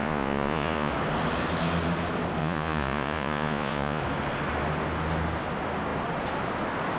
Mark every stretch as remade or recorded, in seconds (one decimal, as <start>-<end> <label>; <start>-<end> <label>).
0.0-0.9 remade; 0.9-2.4 recorded; 2.4-4.0 remade; 4.0-7.0 recorded

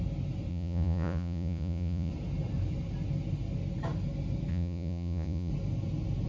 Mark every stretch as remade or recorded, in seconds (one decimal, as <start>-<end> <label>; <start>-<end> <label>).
0.0-0.5 recorded; 0.5-2.1 remade; 2.1-4.5 recorded; 4.5-5.5 remade; 5.5-6.3 recorded

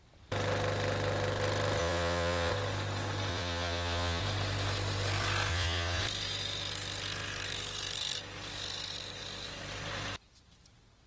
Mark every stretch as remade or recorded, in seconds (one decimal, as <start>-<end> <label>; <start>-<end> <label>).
0.0-1.8 recorded; 1.8-2.5 remade; 2.5-3.3 recorded; 3.3-4.2 remade; 4.2-5.5 recorded; 5.5-6.0 remade; 6.0-11.1 recorded

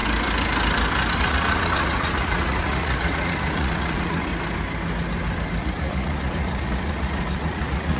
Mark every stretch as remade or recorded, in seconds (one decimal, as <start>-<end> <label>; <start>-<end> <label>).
0.0-1.2 recorded; 1.2-4.3 remade; 4.3-5.6 recorded; 5.6-8.0 remade

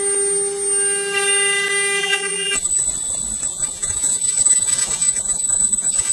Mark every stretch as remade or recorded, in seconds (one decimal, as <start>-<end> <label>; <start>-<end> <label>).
0.0-2.0 recorded; 2.0-2.7 remade; 2.7-3.5 recorded; 3.5-6.1 remade

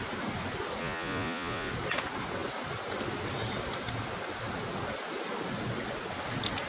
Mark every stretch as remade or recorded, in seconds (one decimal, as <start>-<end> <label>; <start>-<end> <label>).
0.0-0.8 recorded; 0.8-1.7 remade; 1.7-6.7 recorded